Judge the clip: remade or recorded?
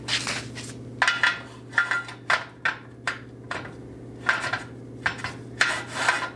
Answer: recorded